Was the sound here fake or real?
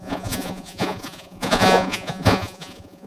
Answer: fake